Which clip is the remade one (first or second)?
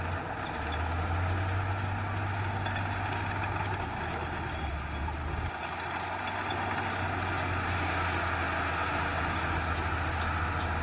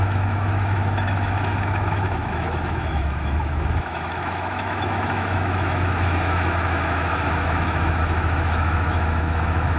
second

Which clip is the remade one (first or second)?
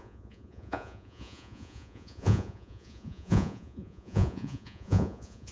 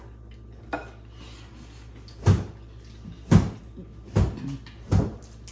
first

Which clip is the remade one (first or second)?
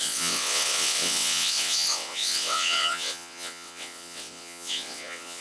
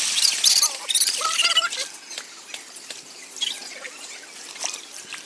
first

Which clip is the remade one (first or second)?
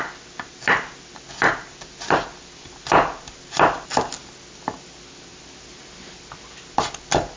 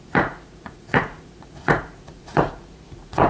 second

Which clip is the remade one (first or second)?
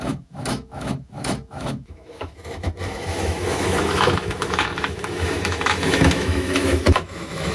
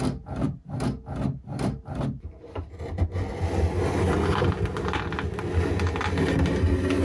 first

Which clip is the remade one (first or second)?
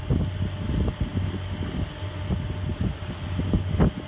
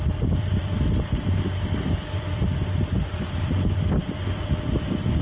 second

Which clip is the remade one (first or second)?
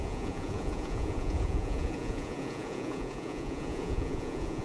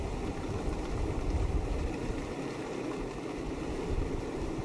first